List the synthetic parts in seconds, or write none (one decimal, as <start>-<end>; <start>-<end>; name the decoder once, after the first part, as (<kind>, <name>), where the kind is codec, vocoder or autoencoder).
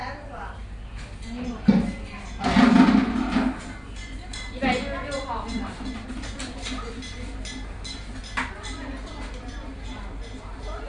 none